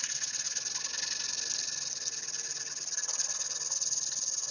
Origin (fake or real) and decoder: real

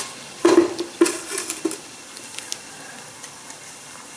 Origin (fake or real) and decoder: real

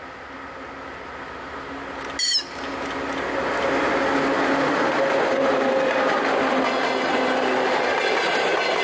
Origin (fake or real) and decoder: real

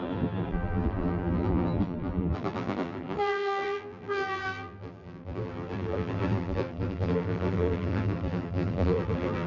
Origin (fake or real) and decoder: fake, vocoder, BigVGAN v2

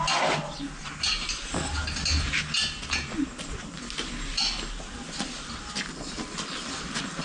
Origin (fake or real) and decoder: real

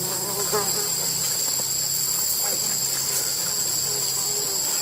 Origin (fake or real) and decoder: real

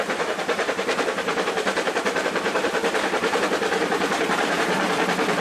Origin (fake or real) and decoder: fake, vocoder, BigVGAN v2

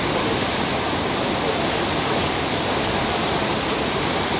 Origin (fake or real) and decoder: fake, vocoder, BigVGAN v2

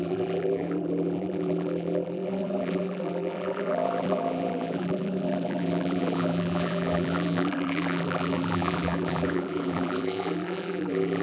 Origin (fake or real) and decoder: fake, vocoder, BigVGAN v2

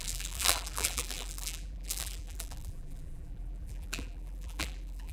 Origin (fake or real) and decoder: fake, vocoder, BigVGAN v2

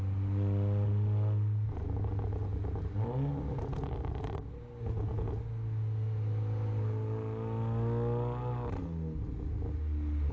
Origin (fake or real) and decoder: real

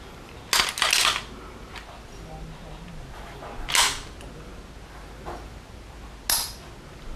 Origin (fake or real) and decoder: real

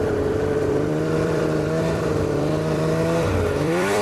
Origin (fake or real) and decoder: fake, vocoder, BigVGAN v2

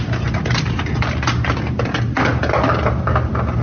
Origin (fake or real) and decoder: real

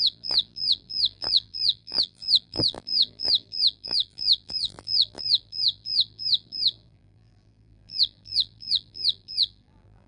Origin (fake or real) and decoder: fake, vocoder, BigVGAN v2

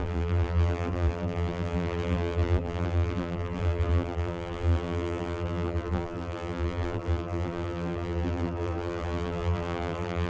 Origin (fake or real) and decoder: fake, vocoder, BigVGAN v2